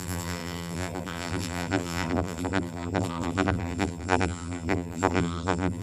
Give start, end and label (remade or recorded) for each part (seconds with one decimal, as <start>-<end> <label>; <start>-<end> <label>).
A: 0.0-5.8 remade